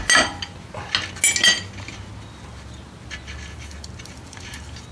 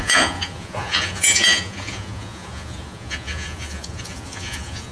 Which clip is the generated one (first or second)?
second